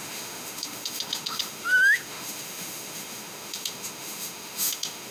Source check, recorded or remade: remade